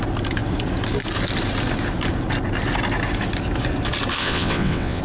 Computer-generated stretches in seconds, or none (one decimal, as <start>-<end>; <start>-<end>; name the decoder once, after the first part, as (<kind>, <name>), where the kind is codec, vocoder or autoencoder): 4.2-5.0 (vocoder, WaveNeXt)